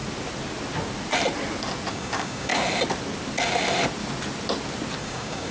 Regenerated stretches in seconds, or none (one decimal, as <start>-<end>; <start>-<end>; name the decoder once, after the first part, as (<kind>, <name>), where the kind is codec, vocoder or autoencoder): 1.9-2.5 (codec, DAC); 5.0-5.5